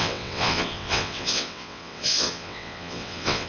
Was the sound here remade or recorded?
remade